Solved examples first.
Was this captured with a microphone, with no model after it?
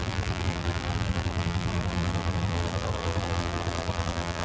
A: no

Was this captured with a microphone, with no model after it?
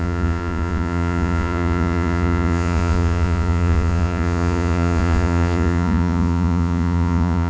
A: no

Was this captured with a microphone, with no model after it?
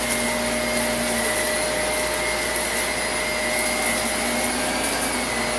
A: yes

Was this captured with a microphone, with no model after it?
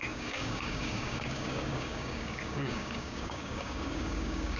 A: no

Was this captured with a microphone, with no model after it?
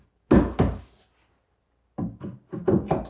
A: yes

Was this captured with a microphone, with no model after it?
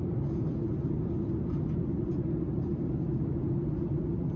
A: yes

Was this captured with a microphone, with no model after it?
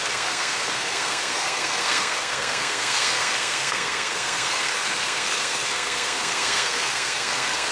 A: no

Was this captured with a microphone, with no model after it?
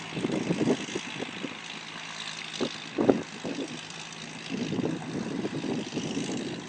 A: yes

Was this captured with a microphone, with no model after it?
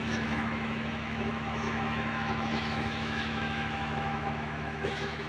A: no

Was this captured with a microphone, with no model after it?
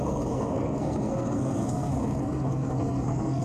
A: no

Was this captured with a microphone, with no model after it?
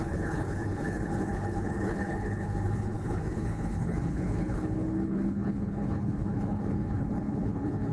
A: no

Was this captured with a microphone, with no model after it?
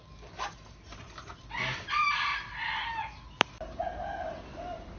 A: yes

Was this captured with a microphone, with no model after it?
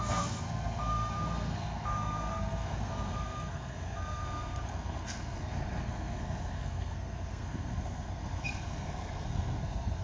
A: no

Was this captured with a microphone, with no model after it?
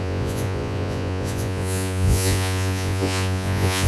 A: no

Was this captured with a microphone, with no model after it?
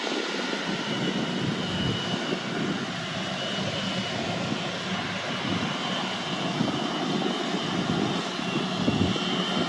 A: yes